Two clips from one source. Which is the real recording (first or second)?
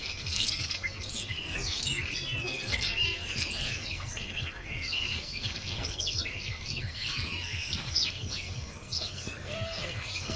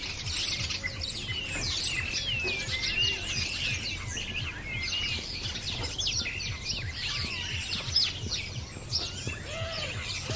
second